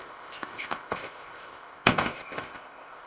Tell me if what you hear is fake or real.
fake